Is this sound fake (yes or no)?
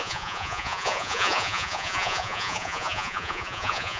yes